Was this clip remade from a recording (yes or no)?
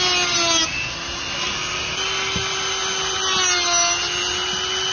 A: no